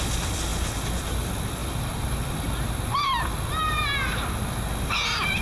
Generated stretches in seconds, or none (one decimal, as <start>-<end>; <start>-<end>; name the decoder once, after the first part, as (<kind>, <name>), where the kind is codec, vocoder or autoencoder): 1.6-3.5 (vocoder, BigVGAN v2)